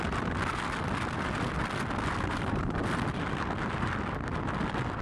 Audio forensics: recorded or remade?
recorded